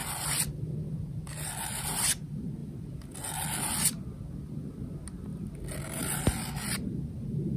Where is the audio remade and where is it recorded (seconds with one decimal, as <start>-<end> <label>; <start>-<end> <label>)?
0.0-7.6 recorded